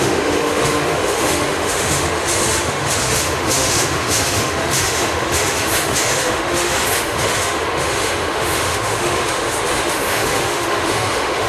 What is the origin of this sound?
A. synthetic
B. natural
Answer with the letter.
A